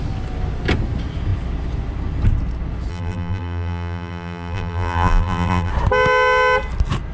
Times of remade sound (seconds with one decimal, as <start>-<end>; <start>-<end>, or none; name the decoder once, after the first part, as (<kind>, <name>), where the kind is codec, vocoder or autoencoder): 2.9-5.7 (vocoder, BigVGAN v2)